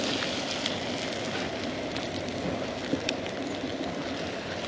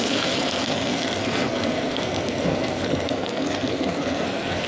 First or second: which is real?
first